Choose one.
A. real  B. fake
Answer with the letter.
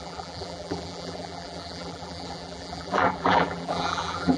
B